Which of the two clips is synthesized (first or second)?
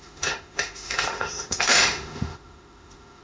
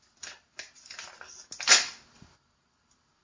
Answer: first